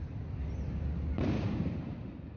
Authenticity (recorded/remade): recorded